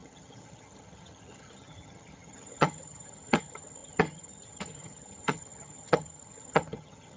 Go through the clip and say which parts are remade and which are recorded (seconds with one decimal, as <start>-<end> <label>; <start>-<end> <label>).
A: 0.0-7.2 remade